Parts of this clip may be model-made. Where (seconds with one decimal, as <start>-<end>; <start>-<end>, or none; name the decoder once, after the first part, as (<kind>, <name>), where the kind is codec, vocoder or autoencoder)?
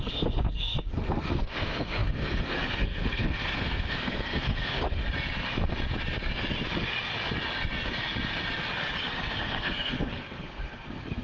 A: 0.0-5.0 (codec, SNAC); 9.4-11.2